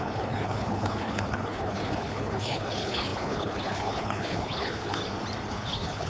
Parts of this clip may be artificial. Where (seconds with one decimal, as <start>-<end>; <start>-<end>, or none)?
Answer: 0.0-5.0; 5.5-6.1